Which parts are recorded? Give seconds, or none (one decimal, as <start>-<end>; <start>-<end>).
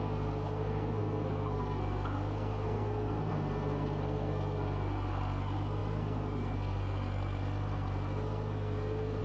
none